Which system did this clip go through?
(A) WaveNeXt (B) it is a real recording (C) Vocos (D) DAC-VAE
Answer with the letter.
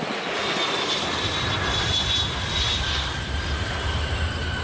B